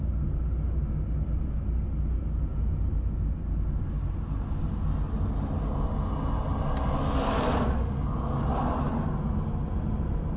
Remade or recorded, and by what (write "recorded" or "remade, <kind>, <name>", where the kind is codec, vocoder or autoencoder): recorded